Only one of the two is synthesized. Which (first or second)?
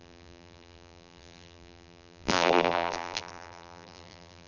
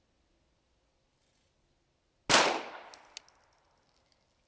first